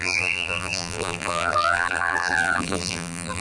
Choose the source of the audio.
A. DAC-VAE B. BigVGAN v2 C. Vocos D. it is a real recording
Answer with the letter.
B